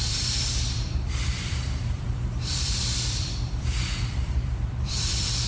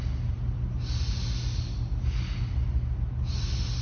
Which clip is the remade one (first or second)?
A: first